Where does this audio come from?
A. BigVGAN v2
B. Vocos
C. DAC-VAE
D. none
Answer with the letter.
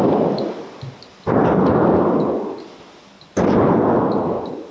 D